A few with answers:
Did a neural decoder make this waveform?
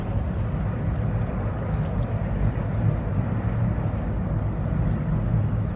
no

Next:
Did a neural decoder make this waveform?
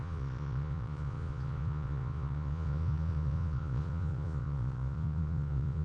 yes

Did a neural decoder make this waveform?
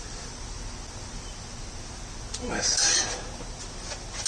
no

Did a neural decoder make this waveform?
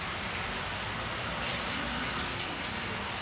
no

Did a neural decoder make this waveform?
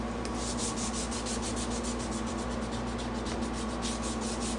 no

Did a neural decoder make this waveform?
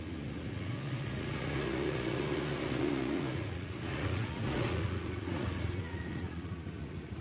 yes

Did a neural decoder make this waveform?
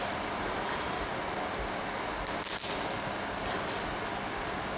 no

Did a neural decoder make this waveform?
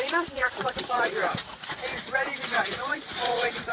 yes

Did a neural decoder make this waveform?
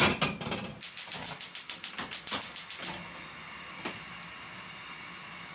no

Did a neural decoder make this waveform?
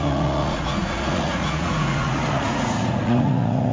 yes